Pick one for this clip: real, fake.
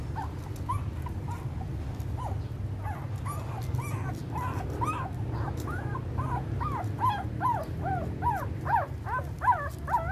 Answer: real